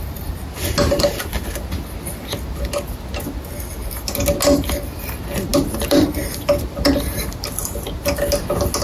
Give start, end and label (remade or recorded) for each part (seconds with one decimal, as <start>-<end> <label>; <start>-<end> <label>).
0.0-8.8 recorded